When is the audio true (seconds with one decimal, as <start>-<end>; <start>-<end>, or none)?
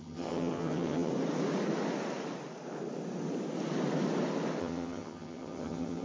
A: 1.1-4.6